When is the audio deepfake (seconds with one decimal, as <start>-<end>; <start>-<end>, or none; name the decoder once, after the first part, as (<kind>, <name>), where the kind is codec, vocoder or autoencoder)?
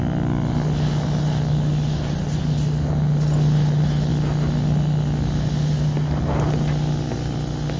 none